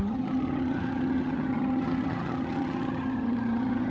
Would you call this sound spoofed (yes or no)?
yes